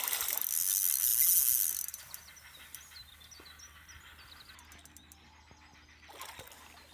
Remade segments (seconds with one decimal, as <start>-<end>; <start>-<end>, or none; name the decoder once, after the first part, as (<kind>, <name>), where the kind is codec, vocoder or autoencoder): none